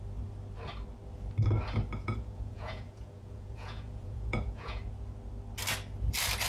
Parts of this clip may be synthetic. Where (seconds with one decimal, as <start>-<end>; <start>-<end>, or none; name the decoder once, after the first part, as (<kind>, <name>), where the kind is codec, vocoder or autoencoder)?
2.0-4.8 (vocoder, Vocos)